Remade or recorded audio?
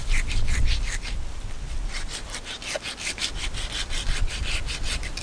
recorded